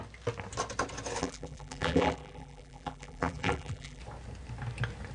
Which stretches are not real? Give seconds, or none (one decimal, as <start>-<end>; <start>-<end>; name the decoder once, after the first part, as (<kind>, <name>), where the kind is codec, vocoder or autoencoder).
1.2-4.0 (vocoder, BigVGAN v2)